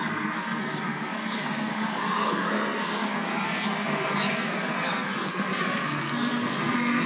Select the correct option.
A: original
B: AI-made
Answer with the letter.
B